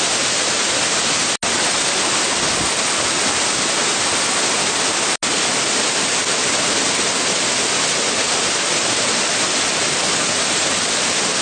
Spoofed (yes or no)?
no